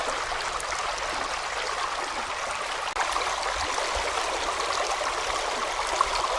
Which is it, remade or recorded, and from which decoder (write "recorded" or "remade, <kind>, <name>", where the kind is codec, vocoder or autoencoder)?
recorded